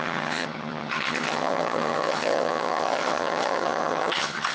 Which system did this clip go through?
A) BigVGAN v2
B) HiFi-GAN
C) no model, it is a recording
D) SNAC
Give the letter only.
B